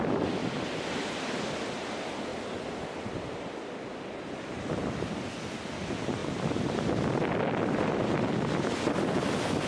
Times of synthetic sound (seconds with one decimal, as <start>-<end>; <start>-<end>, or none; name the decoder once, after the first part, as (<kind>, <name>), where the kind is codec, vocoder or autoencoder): 0.4-1.6 (vocoder, BigVGAN v2)